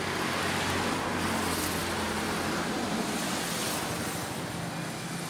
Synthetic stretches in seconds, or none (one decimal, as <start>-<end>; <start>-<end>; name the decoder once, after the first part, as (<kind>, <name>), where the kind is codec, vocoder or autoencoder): none